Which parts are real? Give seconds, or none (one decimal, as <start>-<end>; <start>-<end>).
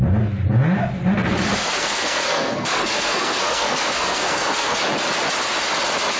0.0-1.6; 4.8-6.2